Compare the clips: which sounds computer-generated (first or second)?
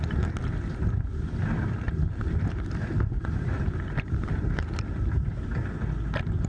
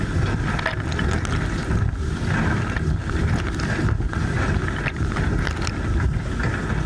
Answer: first